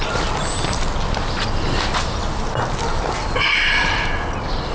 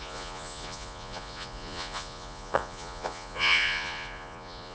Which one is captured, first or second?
first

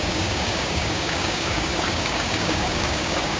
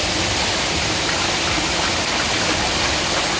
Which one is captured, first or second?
second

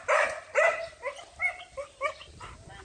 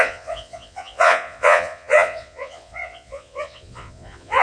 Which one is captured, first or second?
first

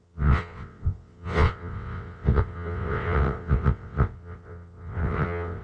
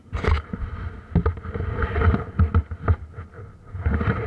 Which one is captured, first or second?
second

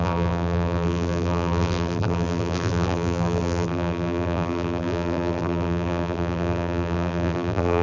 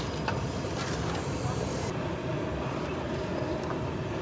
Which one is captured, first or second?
second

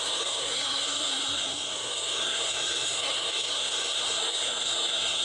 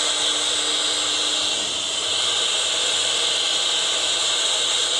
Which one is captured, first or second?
second